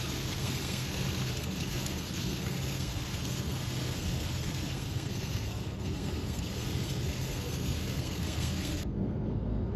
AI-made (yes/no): yes